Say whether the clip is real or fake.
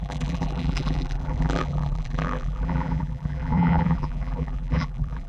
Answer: fake